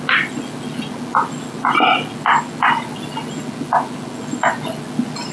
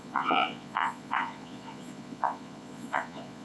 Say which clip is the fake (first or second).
second